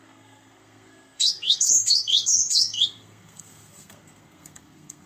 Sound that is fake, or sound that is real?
fake